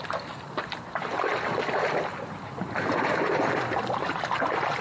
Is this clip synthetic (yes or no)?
no